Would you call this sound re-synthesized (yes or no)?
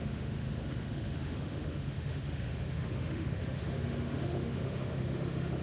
yes